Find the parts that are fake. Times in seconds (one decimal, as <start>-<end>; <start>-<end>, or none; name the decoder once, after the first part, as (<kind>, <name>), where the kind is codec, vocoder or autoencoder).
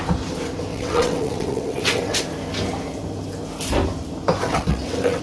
0.7-2.2 (vocoder, WaveNeXt); 4.4-5.2